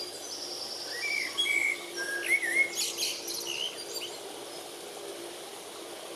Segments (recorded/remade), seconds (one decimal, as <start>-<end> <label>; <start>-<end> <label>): 0.0-6.2 recorded